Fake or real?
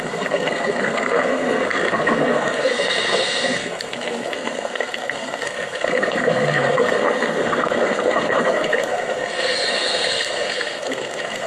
fake